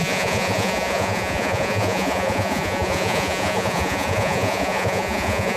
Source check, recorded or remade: remade